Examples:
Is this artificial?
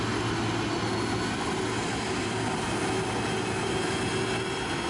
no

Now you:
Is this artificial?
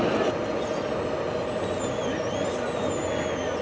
no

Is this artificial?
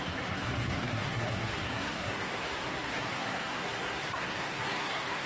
yes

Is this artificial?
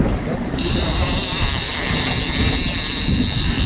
yes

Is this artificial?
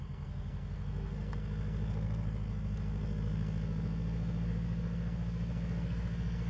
yes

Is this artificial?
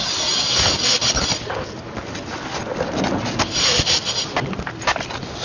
no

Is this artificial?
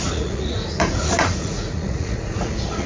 yes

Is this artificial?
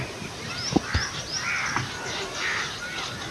no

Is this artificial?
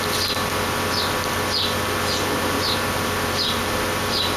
no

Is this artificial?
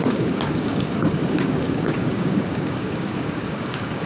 yes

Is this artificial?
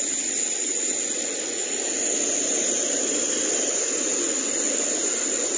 no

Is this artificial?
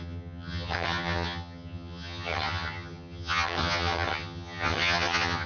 yes